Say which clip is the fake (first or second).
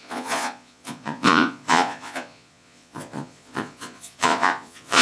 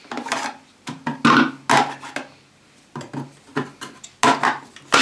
first